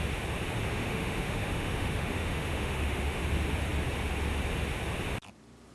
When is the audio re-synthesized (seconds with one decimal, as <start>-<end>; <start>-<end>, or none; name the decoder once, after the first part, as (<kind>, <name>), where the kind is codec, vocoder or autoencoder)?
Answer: 0.7-3.2 (autoencoder, DAC-VAE)